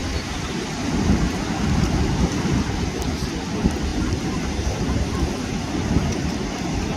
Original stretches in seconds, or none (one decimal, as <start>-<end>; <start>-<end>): 0.8-3.9; 5.4-7.0